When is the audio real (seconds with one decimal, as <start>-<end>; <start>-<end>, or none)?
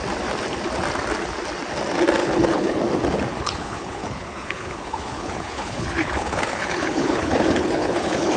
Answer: 0.0-2.2; 2.8-3.3